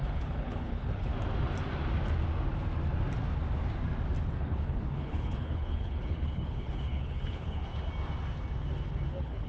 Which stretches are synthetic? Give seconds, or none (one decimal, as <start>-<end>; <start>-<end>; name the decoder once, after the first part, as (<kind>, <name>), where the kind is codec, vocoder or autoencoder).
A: 0.0-1.1 (codec, HILCodec); 4.3-7.7; 9.1-9.5